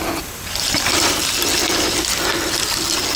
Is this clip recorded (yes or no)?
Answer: yes